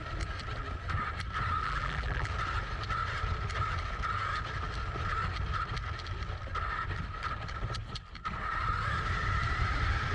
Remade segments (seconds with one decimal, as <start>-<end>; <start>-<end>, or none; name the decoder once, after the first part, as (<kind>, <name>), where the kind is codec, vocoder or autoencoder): 1.6-2.3 (vocoder, BigVGAN v2)